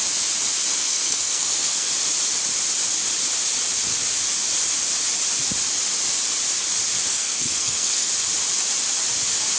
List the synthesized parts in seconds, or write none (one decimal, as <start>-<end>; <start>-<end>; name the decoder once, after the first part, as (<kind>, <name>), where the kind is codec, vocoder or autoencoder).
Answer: 0.8-1.9 (codec, SNAC); 7.1-8.1